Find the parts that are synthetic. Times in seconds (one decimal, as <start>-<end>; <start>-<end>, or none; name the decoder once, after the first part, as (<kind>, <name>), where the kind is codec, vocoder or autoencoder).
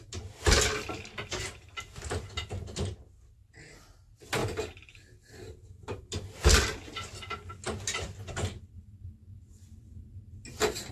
none